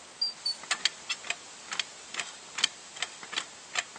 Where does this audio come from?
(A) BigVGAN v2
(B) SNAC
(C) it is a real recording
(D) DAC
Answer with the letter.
C